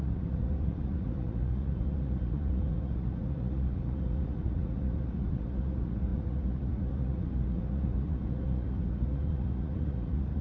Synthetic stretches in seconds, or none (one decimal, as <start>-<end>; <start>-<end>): 0.0-10.4